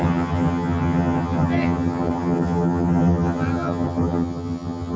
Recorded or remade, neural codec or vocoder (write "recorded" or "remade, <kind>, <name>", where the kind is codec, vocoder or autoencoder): remade, vocoder, HiFi-GAN